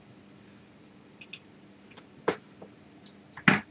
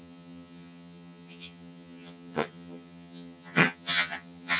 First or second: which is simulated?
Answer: second